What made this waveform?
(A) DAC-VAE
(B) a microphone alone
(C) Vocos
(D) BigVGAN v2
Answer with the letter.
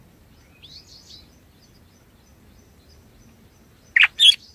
B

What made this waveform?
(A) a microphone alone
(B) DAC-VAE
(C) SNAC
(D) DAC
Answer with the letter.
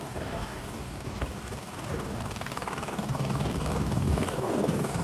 D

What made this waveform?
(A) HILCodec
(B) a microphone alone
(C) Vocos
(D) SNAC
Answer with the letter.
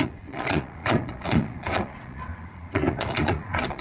C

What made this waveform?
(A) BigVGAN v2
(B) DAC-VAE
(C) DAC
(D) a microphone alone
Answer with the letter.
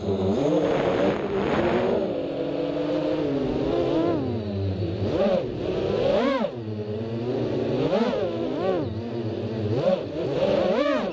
D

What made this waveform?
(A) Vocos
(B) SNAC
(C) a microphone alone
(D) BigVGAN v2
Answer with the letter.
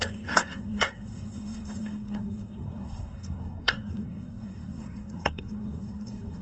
B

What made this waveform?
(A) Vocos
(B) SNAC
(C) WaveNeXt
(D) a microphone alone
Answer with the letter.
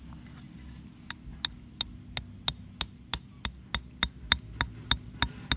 D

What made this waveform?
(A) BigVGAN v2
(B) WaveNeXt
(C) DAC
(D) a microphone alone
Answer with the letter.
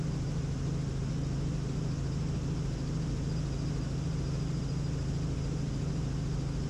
D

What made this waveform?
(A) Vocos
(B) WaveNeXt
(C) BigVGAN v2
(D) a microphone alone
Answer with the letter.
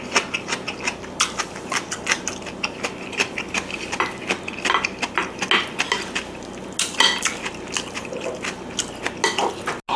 D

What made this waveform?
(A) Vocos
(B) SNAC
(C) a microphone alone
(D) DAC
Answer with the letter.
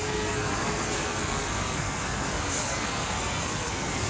B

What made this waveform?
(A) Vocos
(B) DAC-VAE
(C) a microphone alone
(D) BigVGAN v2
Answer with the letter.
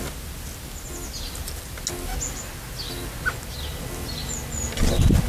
C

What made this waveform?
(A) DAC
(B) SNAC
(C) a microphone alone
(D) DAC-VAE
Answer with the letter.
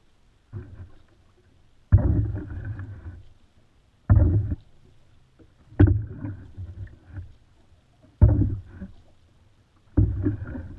C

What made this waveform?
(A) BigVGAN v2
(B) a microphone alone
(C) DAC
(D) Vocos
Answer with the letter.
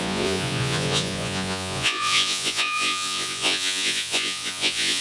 D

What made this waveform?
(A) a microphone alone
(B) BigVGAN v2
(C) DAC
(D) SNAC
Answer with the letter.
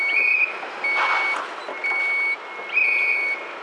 A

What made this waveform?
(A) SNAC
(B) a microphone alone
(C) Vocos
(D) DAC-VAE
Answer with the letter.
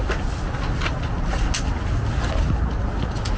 B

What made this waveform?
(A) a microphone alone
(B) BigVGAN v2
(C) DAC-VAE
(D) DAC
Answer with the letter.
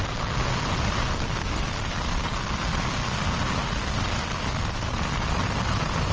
A